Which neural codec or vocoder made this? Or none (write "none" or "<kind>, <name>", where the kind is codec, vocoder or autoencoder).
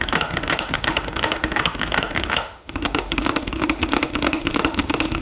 autoencoder, DAC-VAE